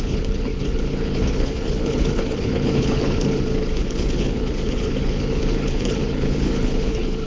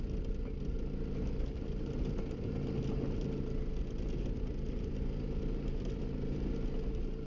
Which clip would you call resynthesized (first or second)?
first